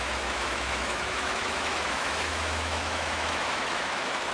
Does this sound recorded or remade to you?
remade